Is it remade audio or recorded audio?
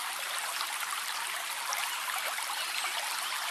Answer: recorded